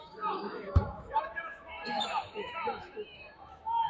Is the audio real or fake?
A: fake